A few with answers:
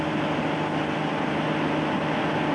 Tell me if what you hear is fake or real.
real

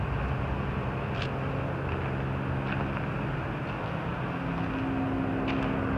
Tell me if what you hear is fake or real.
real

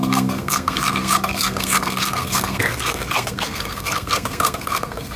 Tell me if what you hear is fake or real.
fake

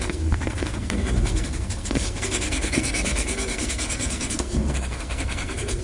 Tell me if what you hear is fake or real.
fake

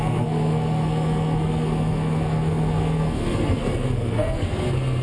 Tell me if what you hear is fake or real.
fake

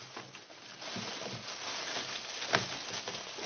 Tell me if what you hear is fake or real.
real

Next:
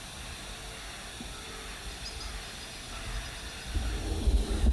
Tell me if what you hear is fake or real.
real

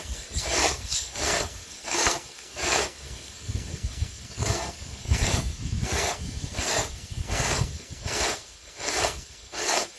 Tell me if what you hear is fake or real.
fake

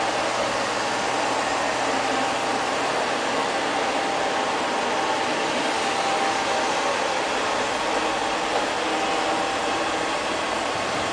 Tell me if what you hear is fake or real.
real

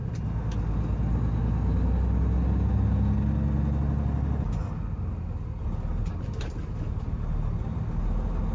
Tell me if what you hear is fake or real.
real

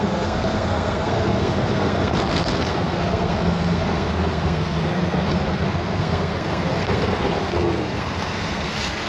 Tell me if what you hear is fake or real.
fake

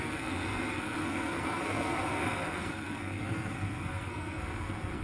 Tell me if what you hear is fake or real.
fake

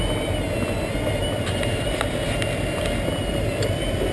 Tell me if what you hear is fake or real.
real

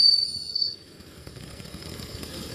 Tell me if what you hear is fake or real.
fake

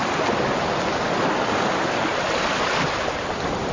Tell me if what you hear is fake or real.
real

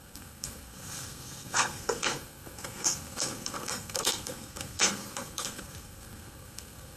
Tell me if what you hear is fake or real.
fake